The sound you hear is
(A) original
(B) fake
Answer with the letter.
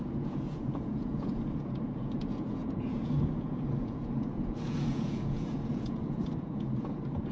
B